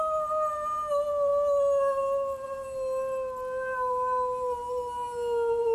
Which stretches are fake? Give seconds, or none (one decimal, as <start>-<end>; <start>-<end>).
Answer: none